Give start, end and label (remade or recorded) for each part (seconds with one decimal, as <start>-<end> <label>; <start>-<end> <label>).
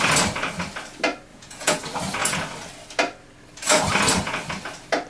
0.0-1.3 recorded; 1.3-1.8 remade; 1.8-5.1 recorded